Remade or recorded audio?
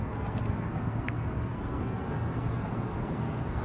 remade